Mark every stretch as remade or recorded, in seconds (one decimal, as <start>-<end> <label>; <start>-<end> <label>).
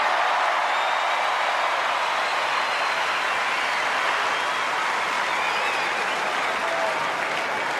0.0-7.8 recorded